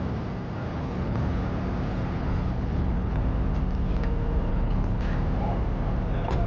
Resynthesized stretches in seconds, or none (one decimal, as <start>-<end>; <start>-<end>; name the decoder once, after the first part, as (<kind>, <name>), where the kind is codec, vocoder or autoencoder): 0.7-1.4 (codec, HILCodec); 1.9-3.2; 4.5-5.0